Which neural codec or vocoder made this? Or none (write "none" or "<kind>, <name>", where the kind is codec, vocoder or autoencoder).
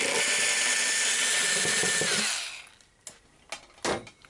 none